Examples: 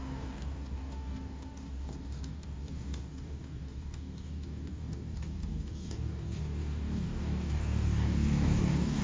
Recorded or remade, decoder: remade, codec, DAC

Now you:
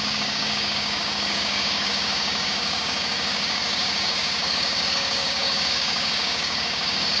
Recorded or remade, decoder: remade, codec, DAC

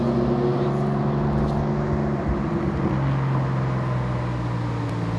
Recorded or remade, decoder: recorded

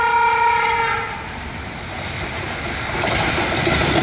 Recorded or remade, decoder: recorded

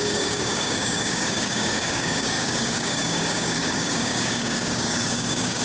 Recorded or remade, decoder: remade, codec, DAC